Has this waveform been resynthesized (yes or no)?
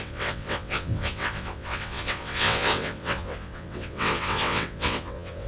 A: yes